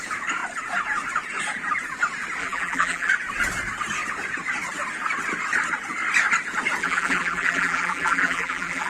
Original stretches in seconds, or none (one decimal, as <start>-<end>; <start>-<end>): 0.0-2.4; 3.1-6.8